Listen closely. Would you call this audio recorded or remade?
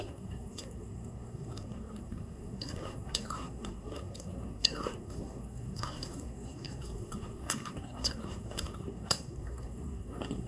remade